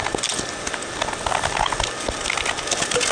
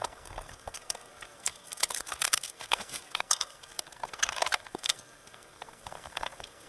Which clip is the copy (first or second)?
second